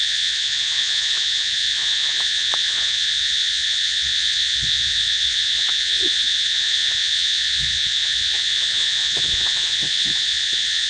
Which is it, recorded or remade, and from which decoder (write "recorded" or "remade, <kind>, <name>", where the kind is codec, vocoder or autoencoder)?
remade, vocoder, Vocos